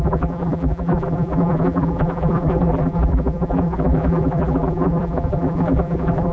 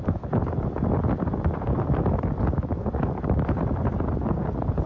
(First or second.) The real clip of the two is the second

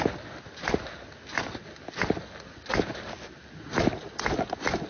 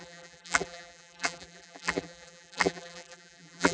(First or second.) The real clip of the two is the first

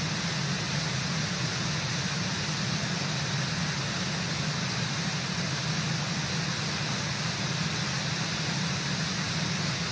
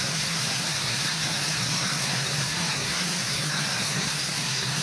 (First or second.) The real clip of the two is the first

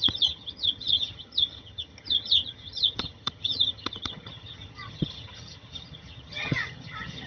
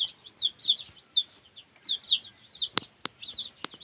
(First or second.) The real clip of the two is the second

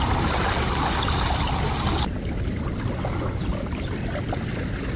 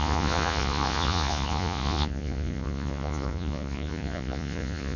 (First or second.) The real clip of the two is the first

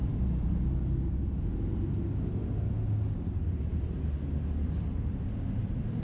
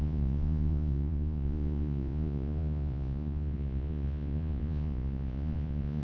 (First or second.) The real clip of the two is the first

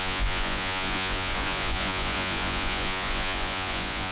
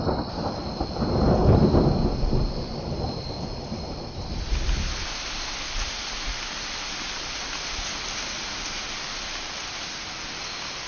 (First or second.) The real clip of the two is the second